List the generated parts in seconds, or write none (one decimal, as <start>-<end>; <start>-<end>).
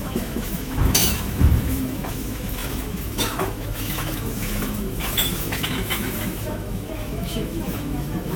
0.0-8.4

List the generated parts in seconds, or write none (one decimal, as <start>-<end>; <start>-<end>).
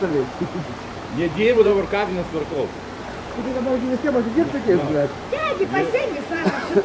0.0-0.6; 1.1-1.7; 3.0-3.5; 4.5-6.8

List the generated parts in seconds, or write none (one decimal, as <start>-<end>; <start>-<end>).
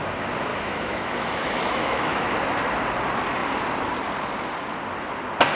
0.5-2.2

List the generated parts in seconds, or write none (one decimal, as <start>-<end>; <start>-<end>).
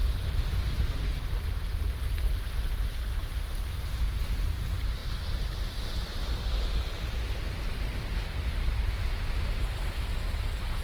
0.5-2.4; 3.2-4.5